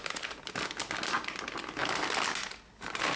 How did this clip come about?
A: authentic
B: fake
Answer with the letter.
A